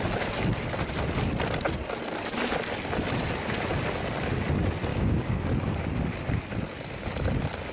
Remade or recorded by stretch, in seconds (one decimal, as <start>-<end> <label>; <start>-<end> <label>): 0.0-4.9 recorded; 4.9-5.4 remade; 5.4-7.7 recorded